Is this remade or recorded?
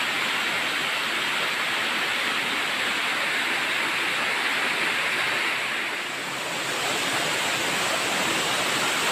recorded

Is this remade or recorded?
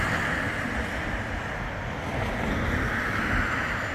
recorded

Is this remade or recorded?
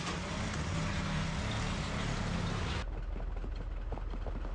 recorded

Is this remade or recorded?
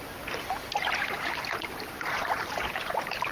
remade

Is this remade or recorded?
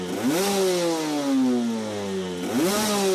recorded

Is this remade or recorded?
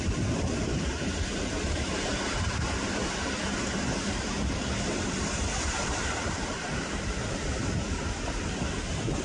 remade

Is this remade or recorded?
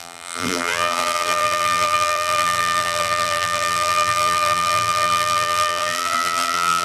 remade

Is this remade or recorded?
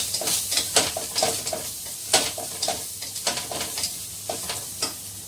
recorded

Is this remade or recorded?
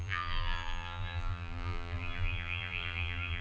remade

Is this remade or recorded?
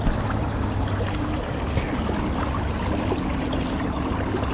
recorded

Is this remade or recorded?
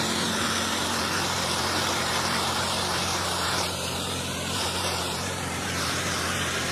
remade